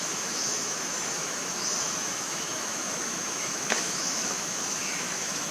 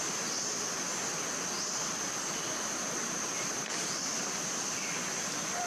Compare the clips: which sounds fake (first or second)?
first